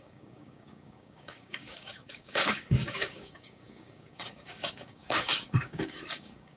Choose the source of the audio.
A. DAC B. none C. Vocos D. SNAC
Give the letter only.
A